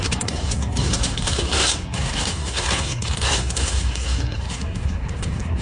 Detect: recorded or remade remade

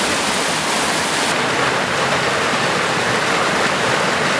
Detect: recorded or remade recorded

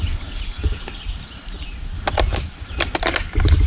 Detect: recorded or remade recorded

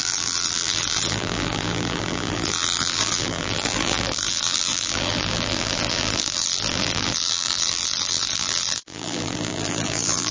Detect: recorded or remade remade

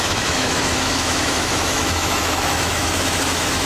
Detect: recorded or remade remade